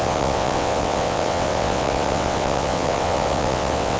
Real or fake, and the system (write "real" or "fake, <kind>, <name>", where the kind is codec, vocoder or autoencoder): fake, vocoder, WaveNeXt